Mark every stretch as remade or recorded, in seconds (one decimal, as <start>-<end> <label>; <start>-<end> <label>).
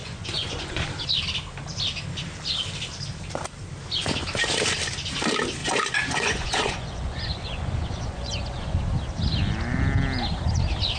0.0-0.8 remade; 0.8-5.6 recorded; 5.6-8.8 remade; 8.8-11.0 recorded